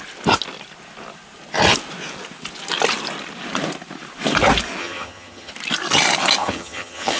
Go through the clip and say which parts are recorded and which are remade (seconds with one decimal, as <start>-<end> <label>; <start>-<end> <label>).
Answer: 0.0-4.8 recorded; 4.8-5.5 remade; 5.5-6.4 recorded; 6.4-7.2 remade